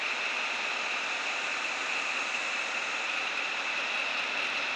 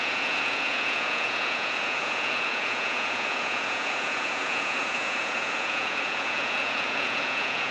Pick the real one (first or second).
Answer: first